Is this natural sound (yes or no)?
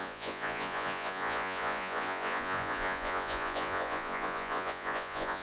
no